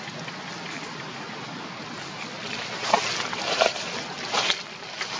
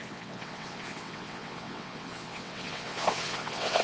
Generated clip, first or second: second